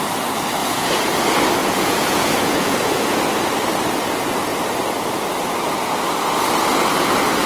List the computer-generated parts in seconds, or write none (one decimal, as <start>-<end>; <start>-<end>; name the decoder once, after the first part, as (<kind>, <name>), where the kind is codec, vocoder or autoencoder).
0.6-1.1 (vocoder, Vocos); 1.6-3.2